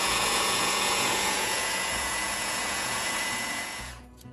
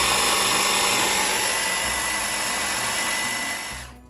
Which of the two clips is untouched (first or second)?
second